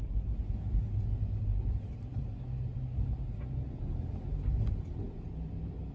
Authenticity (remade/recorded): recorded